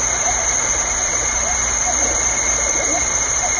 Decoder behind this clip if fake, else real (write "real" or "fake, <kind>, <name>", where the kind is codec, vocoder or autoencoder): real